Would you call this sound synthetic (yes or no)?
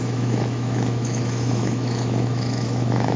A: yes